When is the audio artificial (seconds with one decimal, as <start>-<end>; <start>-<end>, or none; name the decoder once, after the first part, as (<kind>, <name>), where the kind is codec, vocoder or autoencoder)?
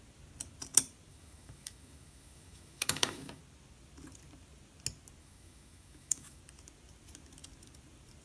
1.1-3.4 (autoencoder, DAC-VAE); 5.2-6.4